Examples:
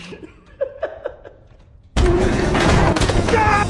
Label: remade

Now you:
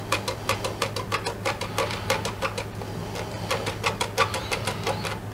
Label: recorded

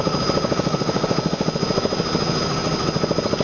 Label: recorded